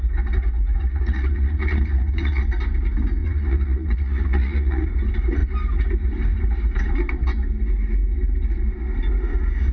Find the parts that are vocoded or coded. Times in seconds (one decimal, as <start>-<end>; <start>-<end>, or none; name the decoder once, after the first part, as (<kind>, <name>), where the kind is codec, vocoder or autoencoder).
0.8-2.4 (vocoder, Vocos); 3.2-4.9